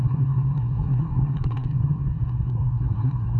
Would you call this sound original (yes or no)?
no